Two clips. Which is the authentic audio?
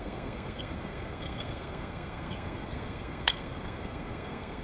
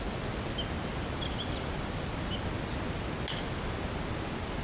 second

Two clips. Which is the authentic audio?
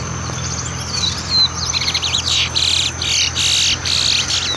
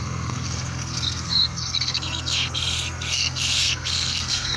first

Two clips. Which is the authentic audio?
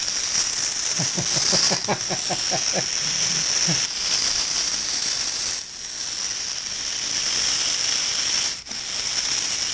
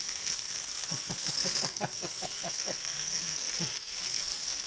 first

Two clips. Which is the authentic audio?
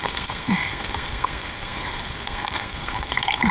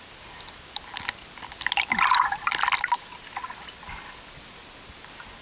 second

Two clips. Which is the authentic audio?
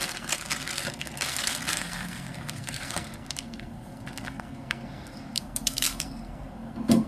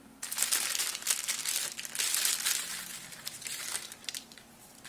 second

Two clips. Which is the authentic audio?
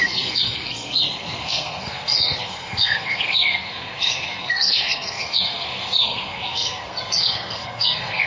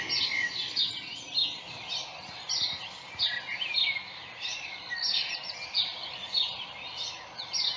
second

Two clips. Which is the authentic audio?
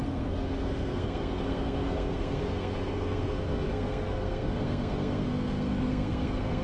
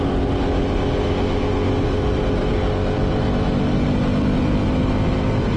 second